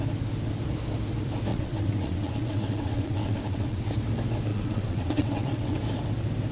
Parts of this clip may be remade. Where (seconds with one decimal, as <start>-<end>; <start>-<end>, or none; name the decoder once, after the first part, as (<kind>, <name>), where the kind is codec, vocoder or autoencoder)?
1.5-3.9 (vocoder, WaveNeXt); 4.5-5.8